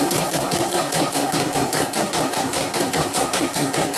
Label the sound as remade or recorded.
remade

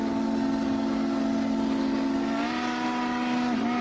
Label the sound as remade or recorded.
recorded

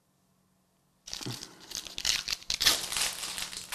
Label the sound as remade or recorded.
recorded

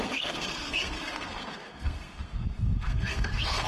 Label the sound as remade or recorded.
remade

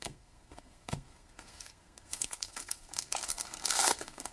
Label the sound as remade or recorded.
remade